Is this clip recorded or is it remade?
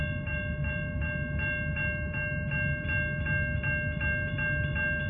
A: recorded